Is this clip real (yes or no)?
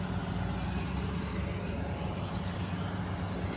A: yes